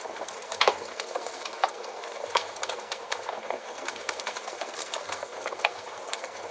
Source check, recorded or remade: remade